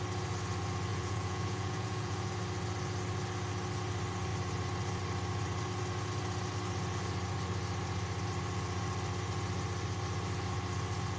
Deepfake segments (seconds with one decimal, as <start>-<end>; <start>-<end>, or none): 0.9-2.3